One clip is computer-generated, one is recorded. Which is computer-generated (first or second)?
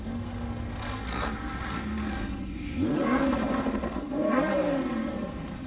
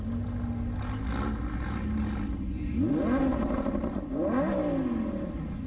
first